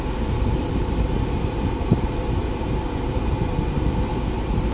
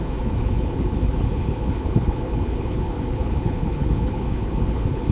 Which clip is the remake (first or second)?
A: second